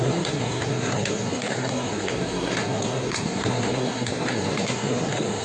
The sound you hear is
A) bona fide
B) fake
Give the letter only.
B